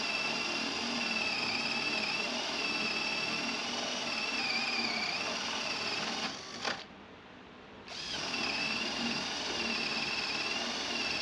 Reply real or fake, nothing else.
real